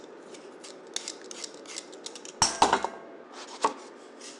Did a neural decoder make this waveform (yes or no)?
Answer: no